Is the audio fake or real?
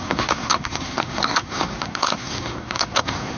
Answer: fake